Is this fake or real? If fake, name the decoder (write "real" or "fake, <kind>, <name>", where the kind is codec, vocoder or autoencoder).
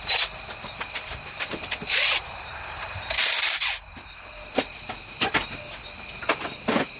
real